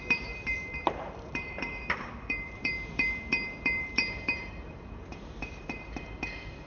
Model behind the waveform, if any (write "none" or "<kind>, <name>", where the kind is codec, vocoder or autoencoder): vocoder, BigVGAN v2